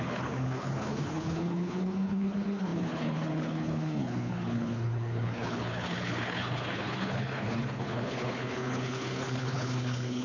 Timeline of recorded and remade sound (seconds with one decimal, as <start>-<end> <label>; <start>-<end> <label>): 0.0-10.2 remade